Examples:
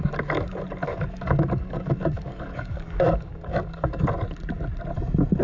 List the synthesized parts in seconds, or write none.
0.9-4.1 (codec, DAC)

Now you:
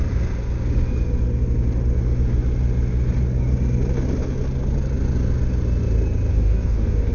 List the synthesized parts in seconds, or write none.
6.3-7.1 (codec, DAC)